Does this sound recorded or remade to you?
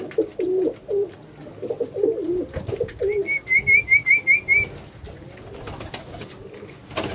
recorded